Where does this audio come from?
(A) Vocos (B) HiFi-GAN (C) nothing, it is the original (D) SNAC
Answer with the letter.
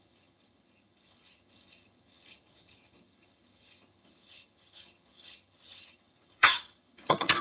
B